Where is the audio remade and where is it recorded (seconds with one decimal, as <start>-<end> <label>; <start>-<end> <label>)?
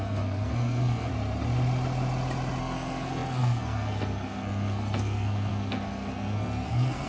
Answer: 0.0-1.1 remade; 1.1-2.6 recorded; 2.6-7.1 remade